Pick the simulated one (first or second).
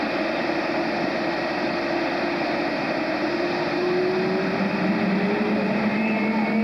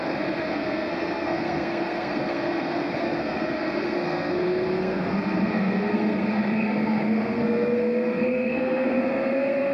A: second